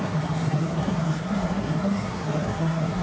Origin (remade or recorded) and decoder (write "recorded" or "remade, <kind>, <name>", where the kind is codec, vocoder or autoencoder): remade, codec, SNAC